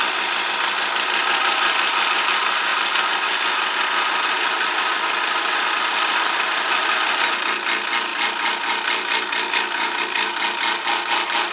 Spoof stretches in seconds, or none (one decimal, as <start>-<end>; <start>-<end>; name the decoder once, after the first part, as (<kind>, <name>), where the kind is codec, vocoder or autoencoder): none